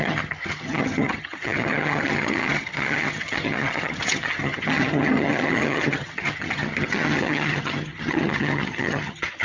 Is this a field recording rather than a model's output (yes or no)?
no